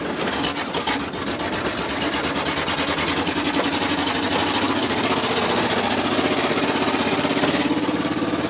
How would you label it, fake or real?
real